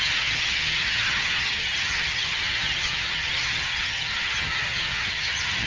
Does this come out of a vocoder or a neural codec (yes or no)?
yes